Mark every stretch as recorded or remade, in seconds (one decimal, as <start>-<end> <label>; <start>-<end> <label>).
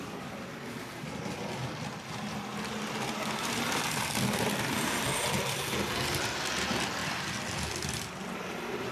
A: 0.0-2.5 recorded; 2.5-5.2 remade; 5.2-7.0 recorded; 7.0-8.9 remade